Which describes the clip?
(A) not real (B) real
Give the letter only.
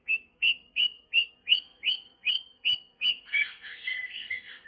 A